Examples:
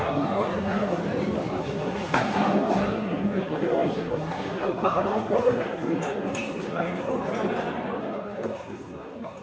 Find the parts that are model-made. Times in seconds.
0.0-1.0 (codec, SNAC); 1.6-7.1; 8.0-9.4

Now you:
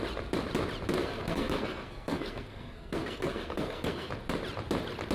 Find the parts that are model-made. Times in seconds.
1.0-4.1 (codec, SNAC)

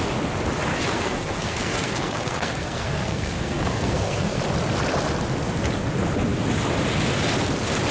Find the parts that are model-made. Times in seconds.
0.7-4.4 (codec, SNAC)

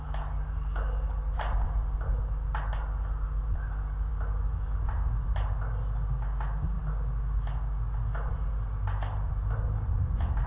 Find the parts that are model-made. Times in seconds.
none

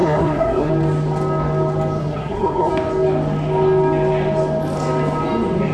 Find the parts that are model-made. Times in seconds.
0.0-0.7 (codec, SNAC); 2.0-2.7

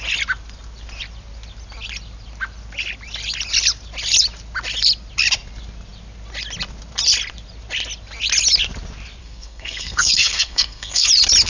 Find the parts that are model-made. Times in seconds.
9.2-11.1 (codec, SNAC)

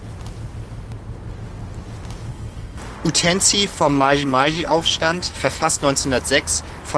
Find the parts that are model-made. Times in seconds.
2.3-2.8 (codec, SNAC); 3.7-5.8